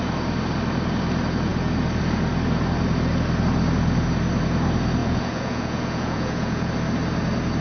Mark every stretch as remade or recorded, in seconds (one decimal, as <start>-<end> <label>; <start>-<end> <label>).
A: 0.0-5.0 recorded; 5.0-6.7 remade; 6.7-7.6 recorded